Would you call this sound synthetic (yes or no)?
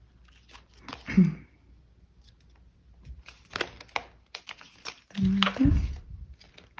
no